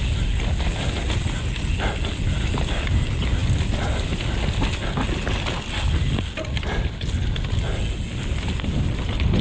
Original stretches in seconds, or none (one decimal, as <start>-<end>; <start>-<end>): 0.0-9.4